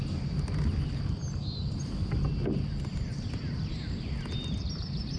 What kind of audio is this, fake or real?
real